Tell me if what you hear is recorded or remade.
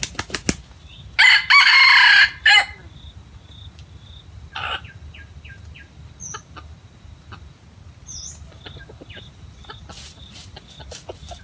recorded